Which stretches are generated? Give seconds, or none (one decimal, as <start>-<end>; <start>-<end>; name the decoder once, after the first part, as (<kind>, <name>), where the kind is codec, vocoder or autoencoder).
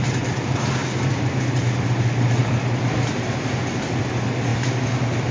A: 0.8-1.4 (vocoder, BigVGAN v2); 2.4-3.6; 4.5-5.3